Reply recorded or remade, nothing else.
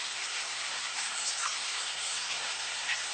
remade